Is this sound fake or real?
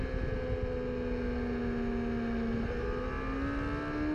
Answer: real